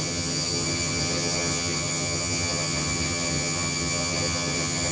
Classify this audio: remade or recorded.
remade